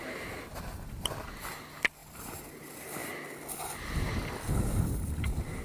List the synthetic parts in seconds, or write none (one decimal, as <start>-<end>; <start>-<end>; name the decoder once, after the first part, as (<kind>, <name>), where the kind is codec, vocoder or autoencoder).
none